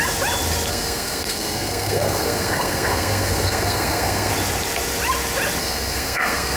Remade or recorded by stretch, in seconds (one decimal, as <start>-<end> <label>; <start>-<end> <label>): 0.0-0.7 recorded; 0.7-4.3 remade; 4.3-5.6 recorded; 5.6-6.6 remade